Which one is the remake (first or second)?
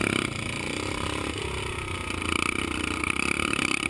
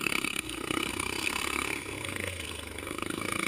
second